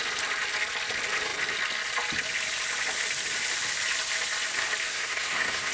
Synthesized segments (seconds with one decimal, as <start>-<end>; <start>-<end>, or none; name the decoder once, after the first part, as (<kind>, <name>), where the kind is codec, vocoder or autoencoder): 4.9-5.7 (codec, SNAC)